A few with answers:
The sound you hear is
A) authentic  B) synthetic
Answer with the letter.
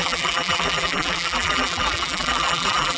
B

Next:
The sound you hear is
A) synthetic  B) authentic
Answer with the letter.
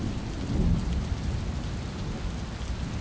B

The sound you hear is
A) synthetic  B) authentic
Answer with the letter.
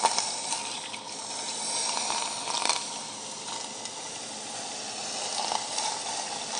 B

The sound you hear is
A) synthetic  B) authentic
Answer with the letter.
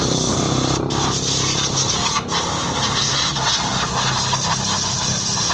B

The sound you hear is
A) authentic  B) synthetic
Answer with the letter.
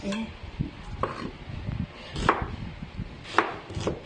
A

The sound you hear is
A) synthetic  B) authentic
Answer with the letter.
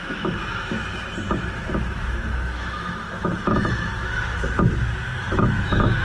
A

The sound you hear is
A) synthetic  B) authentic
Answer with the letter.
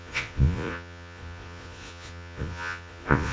A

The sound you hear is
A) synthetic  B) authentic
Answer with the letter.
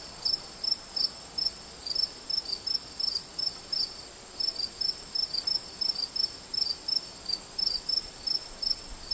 B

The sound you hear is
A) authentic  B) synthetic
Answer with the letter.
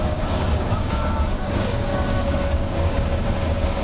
B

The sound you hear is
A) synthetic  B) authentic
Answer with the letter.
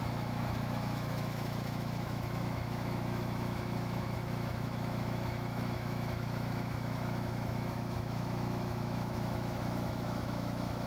A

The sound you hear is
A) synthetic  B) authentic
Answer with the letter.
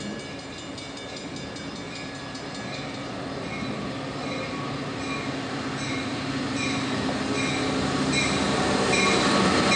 B